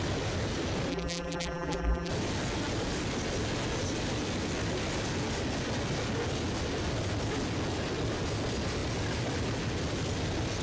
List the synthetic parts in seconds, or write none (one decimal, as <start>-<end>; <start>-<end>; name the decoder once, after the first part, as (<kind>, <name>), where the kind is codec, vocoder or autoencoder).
0.9-2.1 (vocoder, BigVGAN v2)